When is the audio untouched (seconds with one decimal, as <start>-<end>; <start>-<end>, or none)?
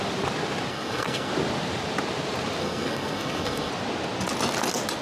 0.0-0.7; 1.3-2.6; 3.7-5.0